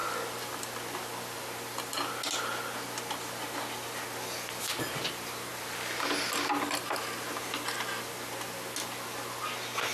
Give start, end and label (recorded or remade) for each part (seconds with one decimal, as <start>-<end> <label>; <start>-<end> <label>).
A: 0.0-9.9 recorded